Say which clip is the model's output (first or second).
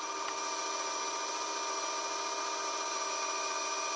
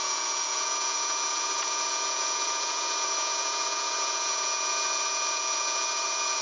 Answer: second